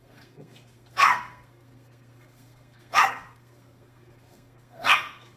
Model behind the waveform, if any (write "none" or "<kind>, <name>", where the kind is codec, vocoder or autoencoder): codec, SNAC